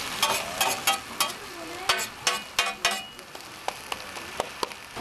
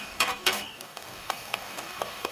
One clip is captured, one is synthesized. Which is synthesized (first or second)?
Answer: second